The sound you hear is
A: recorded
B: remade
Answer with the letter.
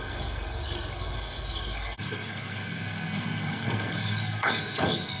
B